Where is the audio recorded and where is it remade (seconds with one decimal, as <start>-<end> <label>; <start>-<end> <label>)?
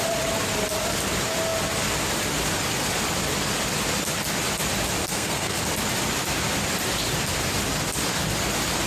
0.0-5.0 recorded; 5.0-5.6 remade; 5.6-8.9 recorded